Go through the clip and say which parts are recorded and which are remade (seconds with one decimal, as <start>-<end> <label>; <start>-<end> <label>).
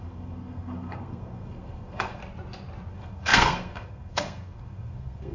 0.0-2.2 remade; 2.2-2.9 recorded; 2.9-5.3 remade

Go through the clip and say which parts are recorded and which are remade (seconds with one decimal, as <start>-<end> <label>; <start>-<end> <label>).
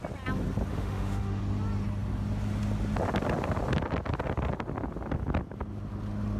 0.0-0.7 recorded; 0.7-1.4 remade; 1.4-6.4 recorded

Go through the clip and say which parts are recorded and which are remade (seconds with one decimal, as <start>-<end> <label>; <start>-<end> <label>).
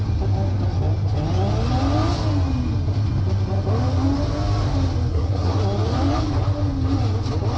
0.0-5.1 recorded; 5.1-5.6 remade; 5.6-7.6 recorded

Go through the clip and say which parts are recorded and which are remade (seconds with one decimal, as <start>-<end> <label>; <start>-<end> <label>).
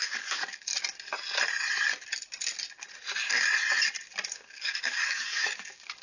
0.0-0.7 remade; 0.7-4.3 recorded; 4.3-6.0 remade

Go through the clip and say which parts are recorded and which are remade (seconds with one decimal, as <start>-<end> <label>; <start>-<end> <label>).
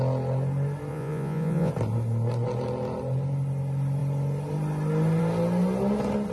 0.0-0.9 recorded; 0.9-1.7 remade; 1.7-6.3 recorded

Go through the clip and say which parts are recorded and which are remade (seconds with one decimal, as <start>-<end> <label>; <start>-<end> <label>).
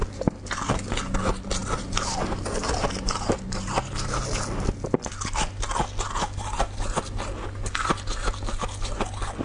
0.0-9.4 recorded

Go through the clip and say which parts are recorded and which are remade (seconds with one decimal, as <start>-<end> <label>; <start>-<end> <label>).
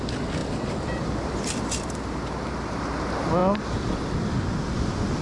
0.0-0.4 recorded; 0.4-1.4 remade; 1.4-5.2 recorded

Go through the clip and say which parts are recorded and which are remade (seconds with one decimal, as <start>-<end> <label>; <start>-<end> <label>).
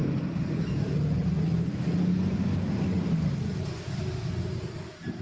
0.0-5.2 recorded